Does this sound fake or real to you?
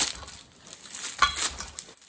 real